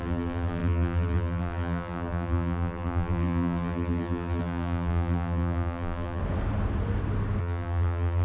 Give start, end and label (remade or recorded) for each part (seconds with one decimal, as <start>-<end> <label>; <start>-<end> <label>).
0.0-6.2 remade; 6.2-7.4 recorded; 7.4-8.2 remade